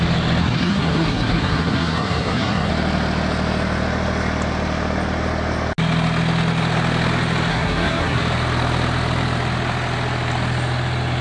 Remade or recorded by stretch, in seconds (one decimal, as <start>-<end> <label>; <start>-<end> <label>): 0.0-0.4 recorded; 0.4-2.7 remade; 2.7-7.5 recorded; 7.5-8.2 remade; 8.2-11.2 recorded

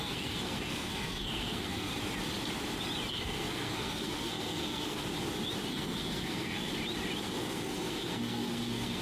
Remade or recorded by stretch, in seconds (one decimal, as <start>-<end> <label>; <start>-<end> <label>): 0.0-1.9 remade; 1.9-3.1 recorded; 3.1-5.0 remade; 5.0-5.7 recorded; 5.7-6.7 remade; 6.7-7.2 recorded; 7.2-9.0 remade